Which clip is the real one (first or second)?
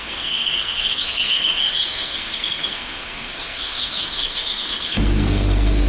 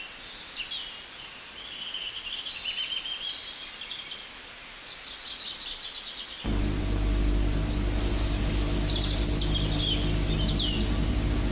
second